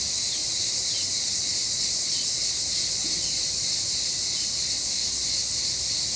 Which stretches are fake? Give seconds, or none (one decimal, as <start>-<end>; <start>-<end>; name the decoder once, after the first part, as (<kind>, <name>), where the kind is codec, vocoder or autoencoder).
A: none